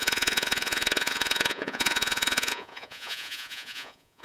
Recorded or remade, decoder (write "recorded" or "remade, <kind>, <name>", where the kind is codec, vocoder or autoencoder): remade, vocoder, Vocos